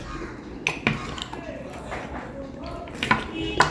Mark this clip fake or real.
real